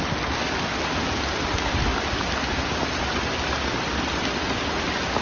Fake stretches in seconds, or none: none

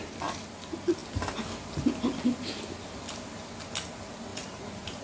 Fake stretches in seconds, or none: 4.3-5.0 (vocoder, Vocos)

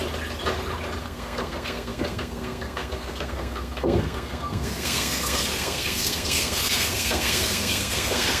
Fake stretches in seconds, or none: 1.0-8.4 (codec, SNAC)

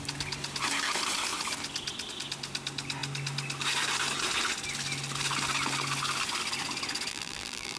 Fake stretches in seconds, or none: 7.1-7.8 (vocoder, BigVGAN v2)

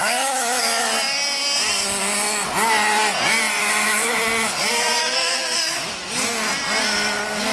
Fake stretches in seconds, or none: 0.0-0.8 (autoencoder, DAC-VAE); 3.6-4.2; 5.0-5.9

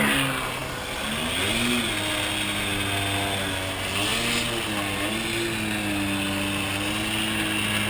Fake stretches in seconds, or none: none

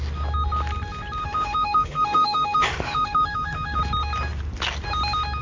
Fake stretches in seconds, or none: 1.2-3.8 (autoencoder, DAC-VAE)

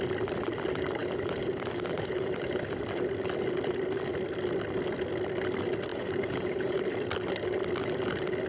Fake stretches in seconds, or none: 1.0-2.8 (vocoder, BigVGAN v2); 5.9-6.8